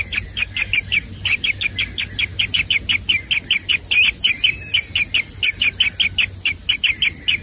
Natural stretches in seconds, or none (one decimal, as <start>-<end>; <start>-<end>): 0.0-7.4